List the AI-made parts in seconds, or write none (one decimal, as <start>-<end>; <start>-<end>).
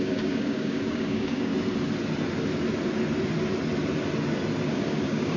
0.0-1.5; 4.7-5.4